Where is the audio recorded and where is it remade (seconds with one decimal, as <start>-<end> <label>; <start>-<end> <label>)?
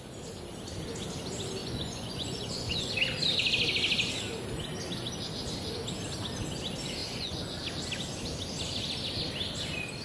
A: 0.0-1.6 recorded; 1.6-2.9 remade; 2.9-7.0 recorded; 7.0-7.6 remade; 7.6-10.0 recorded